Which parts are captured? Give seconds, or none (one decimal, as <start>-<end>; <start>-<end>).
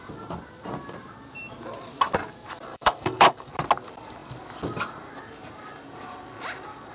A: 0.0-2.7; 3.5-6.9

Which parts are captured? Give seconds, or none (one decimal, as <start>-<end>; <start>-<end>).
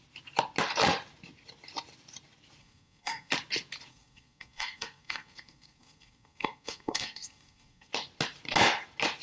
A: 0.0-2.6; 3.3-3.9; 7.9-9.2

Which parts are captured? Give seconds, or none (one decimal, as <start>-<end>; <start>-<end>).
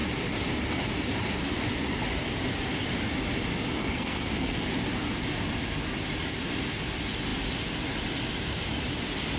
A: 0.0-3.8; 4.6-9.4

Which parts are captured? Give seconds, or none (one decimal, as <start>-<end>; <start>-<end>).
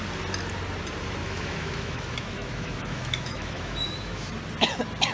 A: 0.0-1.2; 4.3-5.1